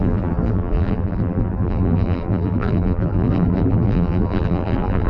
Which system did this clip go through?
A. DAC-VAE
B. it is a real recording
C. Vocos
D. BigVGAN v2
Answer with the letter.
D